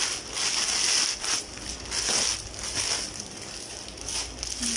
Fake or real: real